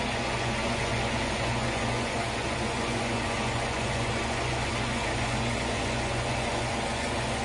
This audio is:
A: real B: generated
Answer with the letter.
B